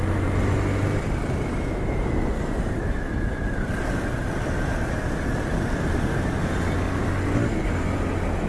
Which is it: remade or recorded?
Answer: recorded